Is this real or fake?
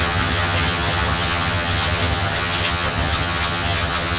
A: fake